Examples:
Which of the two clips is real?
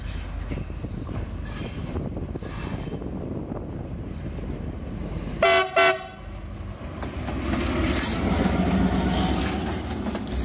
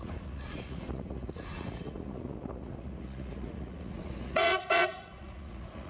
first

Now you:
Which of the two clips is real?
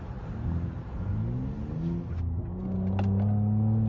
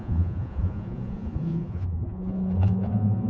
first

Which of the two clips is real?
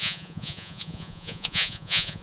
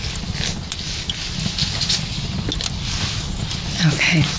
second